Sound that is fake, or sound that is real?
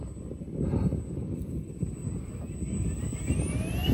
real